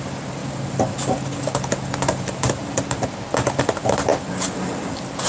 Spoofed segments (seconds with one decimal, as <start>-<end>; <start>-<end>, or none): 0.0-0.4; 3.6-4.1

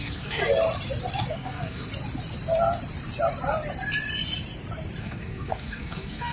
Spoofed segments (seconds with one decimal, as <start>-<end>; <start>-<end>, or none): 0.0-0.4; 1.3-1.9; 5.0-6.3